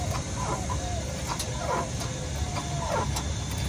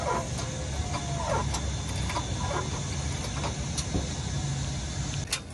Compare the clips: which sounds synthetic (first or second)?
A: first